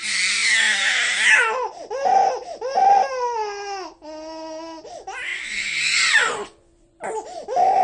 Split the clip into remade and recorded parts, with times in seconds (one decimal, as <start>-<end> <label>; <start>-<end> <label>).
0.0-5.3 recorded; 5.3-7.0 remade; 7.0-7.8 recorded